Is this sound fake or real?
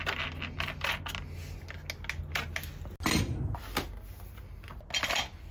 real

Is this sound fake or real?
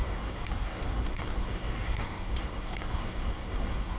fake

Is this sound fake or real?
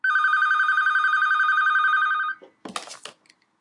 real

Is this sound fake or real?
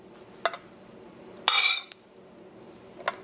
real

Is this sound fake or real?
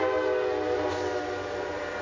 real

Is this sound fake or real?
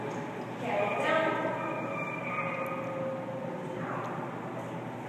real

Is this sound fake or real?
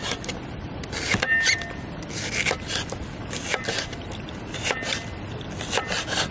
real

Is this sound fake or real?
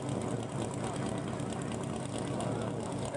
real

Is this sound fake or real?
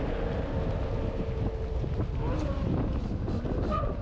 real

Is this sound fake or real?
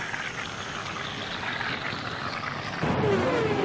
real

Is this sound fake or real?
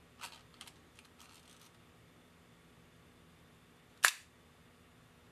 real